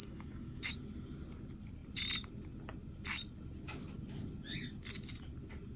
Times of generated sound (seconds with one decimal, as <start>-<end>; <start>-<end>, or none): 0.0-0.6